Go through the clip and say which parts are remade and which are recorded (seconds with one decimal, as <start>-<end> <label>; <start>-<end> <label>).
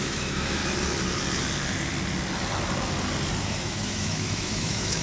0.0-0.6 remade; 0.6-3.4 recorded; 3.4-5.0 remade